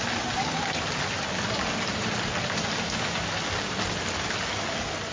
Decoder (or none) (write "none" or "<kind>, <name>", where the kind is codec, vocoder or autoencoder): none